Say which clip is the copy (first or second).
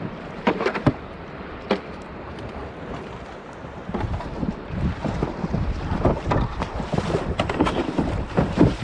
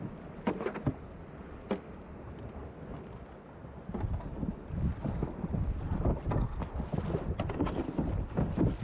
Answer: first